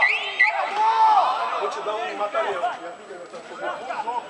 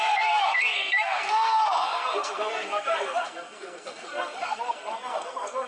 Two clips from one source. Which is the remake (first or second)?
second